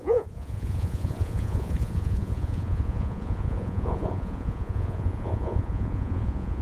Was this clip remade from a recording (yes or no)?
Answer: yes